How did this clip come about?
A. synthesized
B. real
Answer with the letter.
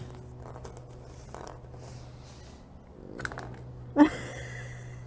B